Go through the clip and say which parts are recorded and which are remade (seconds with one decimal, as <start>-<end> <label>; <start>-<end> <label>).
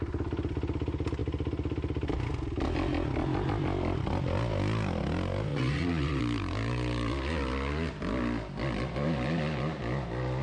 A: 0.0-5.5 recorded; 5.5-6.2 remade; 6.2-10.4 recorded